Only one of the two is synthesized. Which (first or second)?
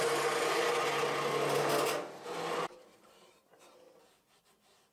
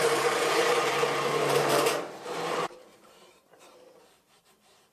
second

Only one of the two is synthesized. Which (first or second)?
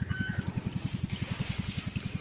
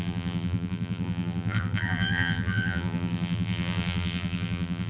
second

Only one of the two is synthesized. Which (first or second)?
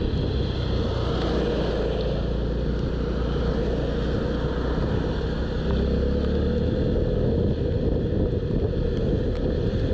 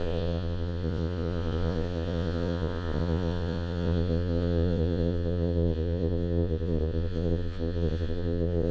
second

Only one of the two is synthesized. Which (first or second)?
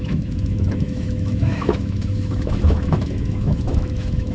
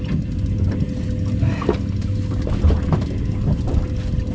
first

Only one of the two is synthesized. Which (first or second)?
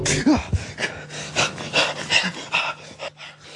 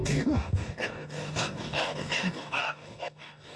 second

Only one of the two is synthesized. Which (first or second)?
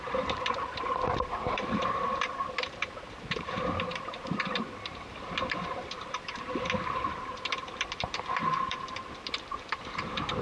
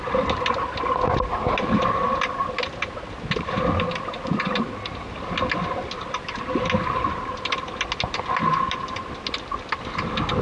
first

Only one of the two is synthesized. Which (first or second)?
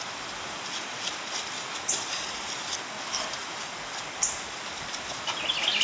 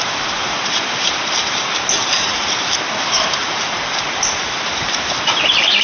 second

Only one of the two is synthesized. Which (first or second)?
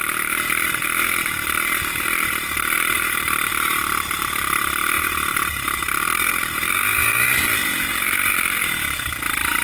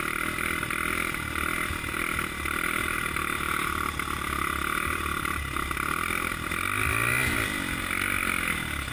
first